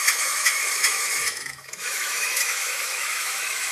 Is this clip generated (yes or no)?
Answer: yes